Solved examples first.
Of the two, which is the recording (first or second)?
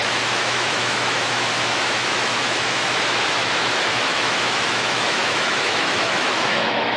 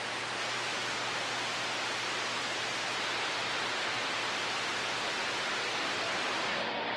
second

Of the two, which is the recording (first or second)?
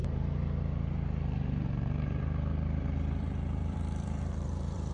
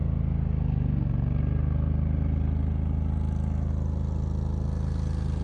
second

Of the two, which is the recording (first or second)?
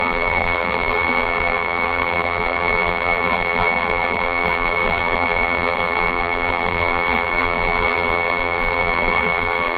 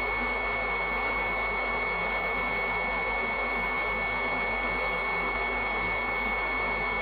second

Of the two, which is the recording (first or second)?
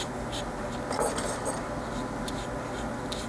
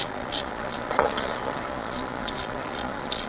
first